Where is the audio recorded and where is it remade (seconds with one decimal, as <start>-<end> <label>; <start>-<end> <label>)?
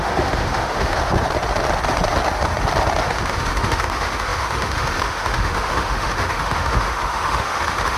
0.0-1.0 remade; 1.0-3.0 recorded; 3.0-8.0 remade